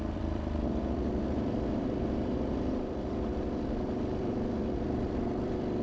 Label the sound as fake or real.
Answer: fake